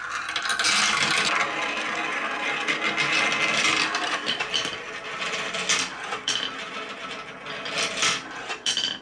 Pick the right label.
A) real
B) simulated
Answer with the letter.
A